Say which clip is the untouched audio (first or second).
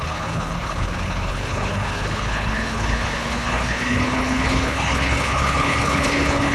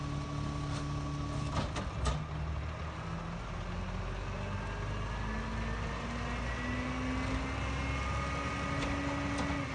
second